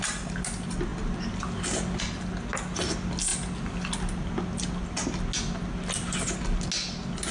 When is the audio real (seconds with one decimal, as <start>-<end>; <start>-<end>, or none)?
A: 0.0-7.3